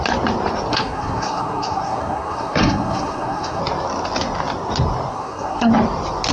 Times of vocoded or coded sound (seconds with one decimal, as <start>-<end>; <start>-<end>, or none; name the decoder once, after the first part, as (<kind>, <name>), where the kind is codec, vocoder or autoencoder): 0.7-3.6 (codec, SNAC); 5.1-5.7